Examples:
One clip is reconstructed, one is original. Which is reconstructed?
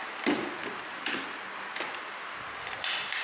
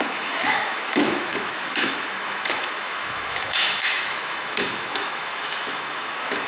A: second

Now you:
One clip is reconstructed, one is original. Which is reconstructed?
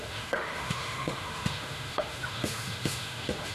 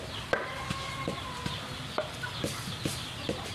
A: first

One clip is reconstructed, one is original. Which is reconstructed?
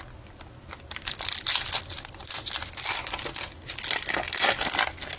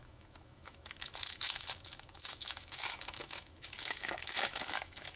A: second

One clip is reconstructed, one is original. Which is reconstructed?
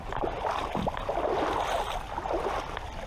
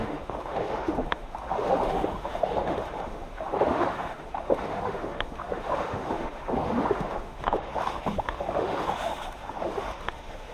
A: second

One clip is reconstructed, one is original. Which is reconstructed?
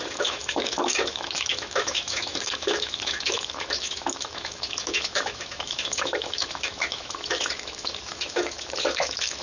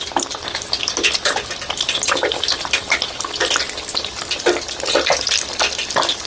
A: first